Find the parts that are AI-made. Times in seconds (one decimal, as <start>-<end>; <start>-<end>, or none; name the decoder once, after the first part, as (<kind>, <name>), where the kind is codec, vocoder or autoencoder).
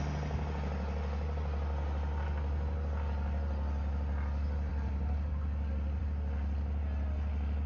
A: none